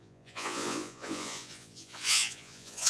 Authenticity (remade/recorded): remade